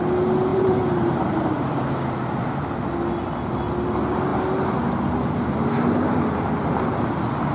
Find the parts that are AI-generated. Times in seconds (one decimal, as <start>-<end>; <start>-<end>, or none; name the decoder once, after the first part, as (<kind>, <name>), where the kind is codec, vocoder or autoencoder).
0.5-1.8 (vocoder, BigVGAN v2)